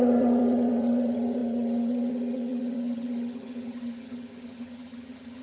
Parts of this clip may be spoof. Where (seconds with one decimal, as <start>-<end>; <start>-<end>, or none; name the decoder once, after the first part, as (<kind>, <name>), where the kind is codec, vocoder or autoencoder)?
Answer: 0.0-5.4 (vocoder, HiFi-GAN)